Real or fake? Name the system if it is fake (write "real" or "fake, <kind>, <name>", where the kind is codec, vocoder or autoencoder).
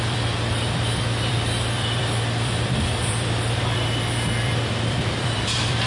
fake, vocoder, BigVGAN v2